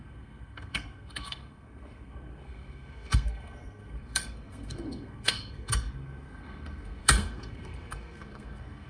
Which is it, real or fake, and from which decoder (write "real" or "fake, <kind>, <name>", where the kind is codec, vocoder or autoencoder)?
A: fake, codec, SNAC